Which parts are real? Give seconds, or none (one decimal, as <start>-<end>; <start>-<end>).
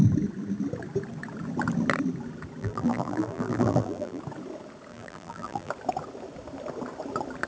0.0-2.6; 4.2-4.9; 5.7-7.5